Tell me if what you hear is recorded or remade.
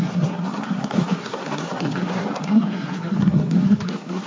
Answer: remade